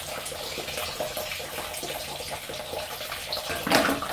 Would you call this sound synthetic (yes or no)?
no